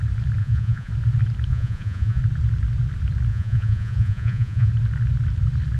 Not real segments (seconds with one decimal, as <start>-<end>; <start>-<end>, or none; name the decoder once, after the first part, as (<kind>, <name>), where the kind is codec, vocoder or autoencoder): 0.4-0.9 (vocoder, Vocos); 1.5-2.2; 3.3-4.7